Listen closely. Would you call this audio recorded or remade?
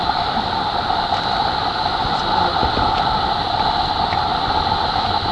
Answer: recorded